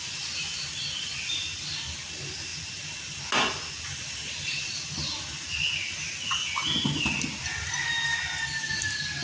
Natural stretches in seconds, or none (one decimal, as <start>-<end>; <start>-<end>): 0.0-9.2